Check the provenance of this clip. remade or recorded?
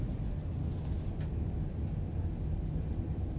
recorded